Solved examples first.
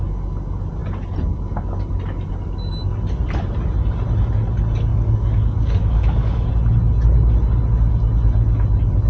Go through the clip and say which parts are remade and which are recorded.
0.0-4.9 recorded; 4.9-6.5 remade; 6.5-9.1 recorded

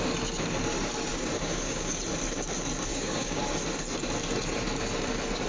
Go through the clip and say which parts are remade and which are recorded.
0.0-1.1 recorded; 1.1-2.0 remade; 2.0-2.9 recorded; 2.9-3.4 remade; 3.4-5.5 recorded

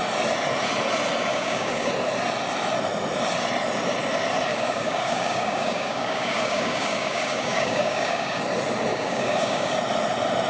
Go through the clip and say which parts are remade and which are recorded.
0.0-1.3 recorded; 1.3-1.9 remade; 1.9-4.5 recorded; 4.5-8.4 remade; 8.4-8.9 recorded; 8.9-9.7 remade; 9.7-10.5 recorded